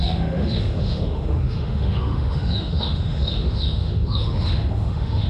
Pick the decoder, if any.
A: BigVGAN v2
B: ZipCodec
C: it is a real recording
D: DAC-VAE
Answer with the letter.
D